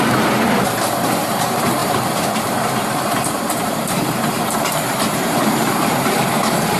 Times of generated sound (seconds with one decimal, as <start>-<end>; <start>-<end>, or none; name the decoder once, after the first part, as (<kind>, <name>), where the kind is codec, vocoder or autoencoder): 0.0-6.8 (vocoder, BigVGAN v2)